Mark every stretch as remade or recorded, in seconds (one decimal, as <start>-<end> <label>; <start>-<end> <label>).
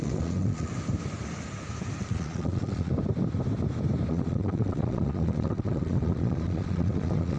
0.0-0.7 remade; 0.7-2.1 recorded; 2.1-2.9 remade; 2.9-4.1 recorded; 4.1-7.4 remade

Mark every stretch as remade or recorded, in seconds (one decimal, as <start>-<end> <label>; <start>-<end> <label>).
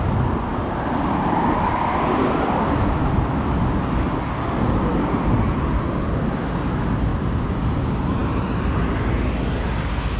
0.0-10.2 recorded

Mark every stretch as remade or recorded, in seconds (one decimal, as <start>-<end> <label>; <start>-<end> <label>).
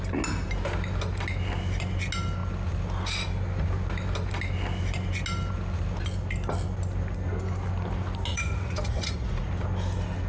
0.0-8.3 recorded; 8.3-9.5 remade; 9.5-10.3 recorded